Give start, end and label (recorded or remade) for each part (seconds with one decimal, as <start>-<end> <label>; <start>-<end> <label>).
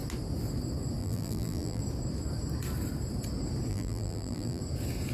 0.0-1.0 recorded; 1.0-1.8 remade; 1.8-3.7 recorded; 3.7-4.6 remade; 4.6-5.1 recorded